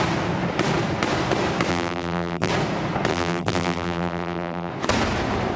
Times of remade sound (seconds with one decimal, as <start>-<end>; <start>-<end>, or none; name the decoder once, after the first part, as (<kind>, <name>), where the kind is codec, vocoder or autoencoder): 1.7-2.5 (vocoder, BigVGAN v2); 3.1-4.7